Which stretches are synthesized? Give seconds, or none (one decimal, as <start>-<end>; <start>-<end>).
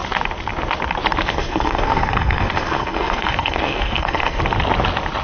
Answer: 1.3-4.4